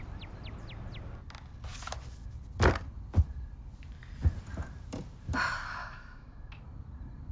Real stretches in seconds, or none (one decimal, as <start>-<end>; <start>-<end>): 0.0-5.8; 6.5-7.3